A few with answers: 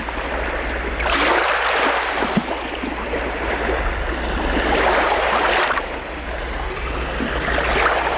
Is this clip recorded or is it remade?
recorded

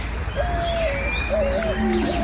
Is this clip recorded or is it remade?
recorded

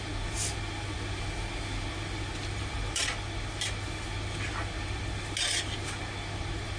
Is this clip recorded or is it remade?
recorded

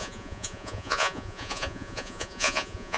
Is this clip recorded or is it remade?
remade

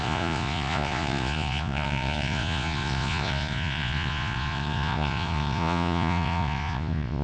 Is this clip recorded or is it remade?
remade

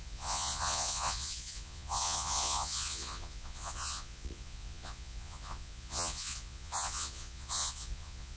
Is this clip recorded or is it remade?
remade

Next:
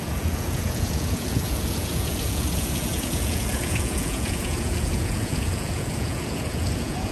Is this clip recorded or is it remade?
remade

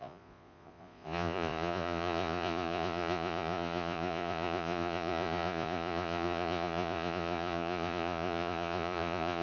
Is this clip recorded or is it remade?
remade